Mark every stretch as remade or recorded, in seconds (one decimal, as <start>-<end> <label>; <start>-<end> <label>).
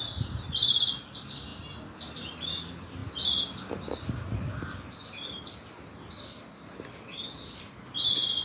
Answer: 0.0-8.4 recorded